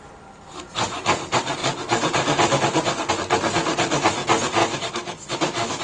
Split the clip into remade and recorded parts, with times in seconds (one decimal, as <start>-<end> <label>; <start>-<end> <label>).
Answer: 0.0-4.6 recorded; 4.6-5.8 remade